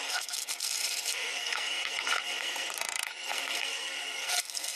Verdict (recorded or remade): remade